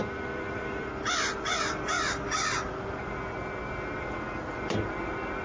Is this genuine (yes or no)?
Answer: yes